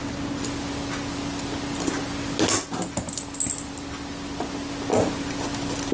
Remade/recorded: recorded